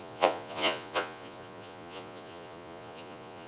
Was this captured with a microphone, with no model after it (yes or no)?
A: no